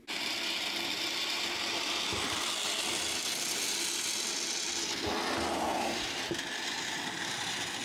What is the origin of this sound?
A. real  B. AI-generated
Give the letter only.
A